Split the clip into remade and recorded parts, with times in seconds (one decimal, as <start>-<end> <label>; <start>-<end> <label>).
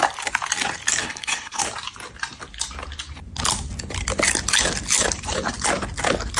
0.0-1.0 recorded; 1.0-1.6 remade; 1.6-6.4 recorded